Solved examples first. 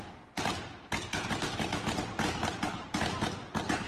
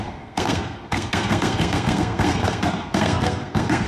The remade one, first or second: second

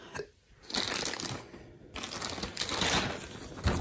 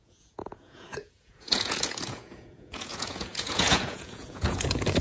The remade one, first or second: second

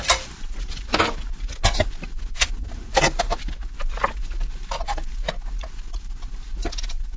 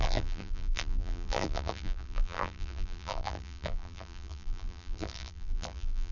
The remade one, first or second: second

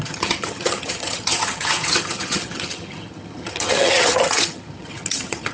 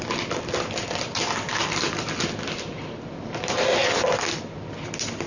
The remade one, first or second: first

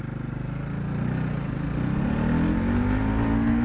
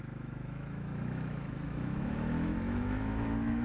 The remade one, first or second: second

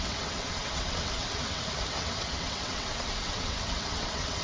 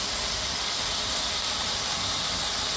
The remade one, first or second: first